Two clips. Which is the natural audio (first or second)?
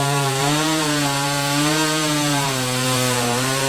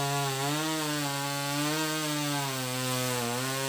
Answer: second